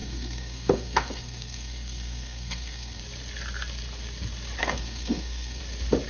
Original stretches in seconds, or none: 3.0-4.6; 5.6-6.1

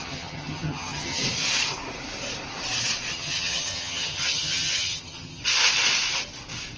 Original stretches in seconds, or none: 1.2-3.1; 5.4-6.8

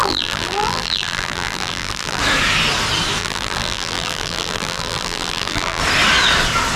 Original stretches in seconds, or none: 2.2-3.2; 5.8-6.8

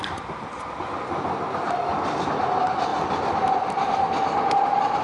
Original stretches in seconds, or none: 0.0-5.0

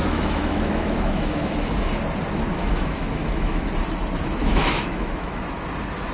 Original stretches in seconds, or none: 1.7-2.5; 3.7-4.4; 5.4-6.1

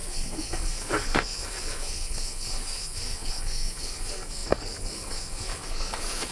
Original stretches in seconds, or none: none

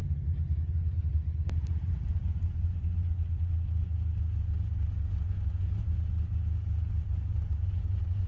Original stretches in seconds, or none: 0.0-1.0; 2.1-7.0

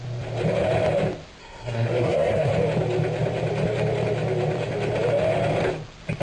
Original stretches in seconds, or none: 0.0-1.4; 2.5-6.2